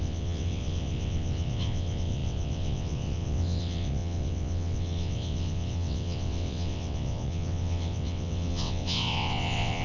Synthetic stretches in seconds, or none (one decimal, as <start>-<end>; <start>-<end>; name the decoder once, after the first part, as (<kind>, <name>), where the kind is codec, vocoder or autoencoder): 0.0-9.8 (vocoder, WaveNeXt)